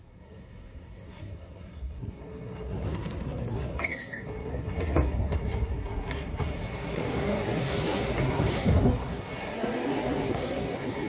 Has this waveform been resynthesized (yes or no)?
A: yes